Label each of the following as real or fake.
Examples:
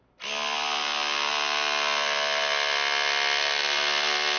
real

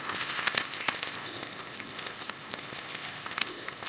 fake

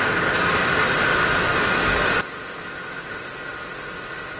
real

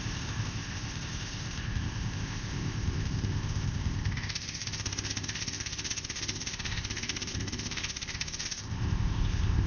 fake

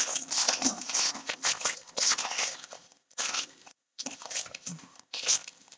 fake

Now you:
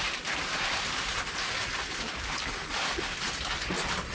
real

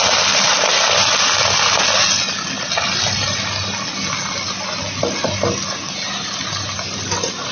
real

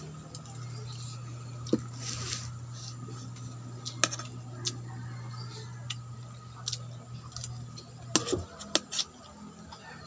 real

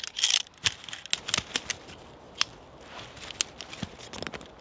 real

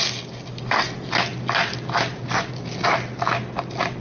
real